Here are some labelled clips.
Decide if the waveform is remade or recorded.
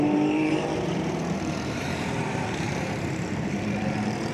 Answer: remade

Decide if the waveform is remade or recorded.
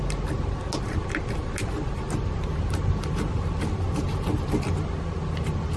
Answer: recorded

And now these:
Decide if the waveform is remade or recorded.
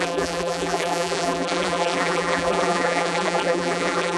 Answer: remade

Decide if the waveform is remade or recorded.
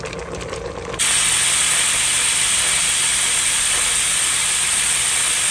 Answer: remade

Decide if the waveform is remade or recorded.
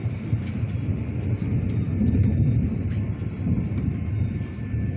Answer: remade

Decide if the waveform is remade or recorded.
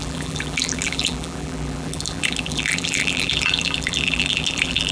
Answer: remade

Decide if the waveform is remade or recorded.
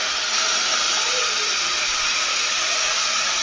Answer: remade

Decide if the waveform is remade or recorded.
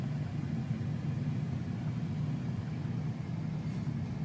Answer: recorded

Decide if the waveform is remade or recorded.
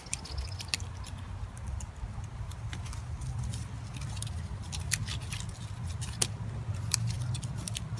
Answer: recorded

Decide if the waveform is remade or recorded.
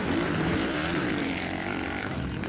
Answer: remade